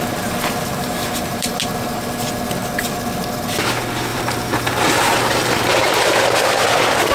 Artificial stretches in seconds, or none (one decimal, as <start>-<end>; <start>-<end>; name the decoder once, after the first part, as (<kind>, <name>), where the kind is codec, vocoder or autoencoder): 0.7-1.6 (vocoder, BigVGAN v2); 4.1-5.9